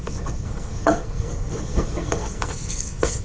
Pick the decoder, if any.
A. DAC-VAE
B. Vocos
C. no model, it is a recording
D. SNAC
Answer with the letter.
D